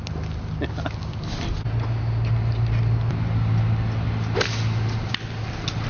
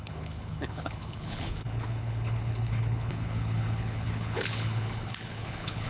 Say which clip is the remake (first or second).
second